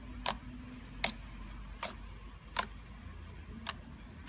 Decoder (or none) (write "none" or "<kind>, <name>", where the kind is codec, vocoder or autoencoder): none